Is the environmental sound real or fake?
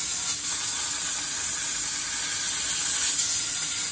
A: real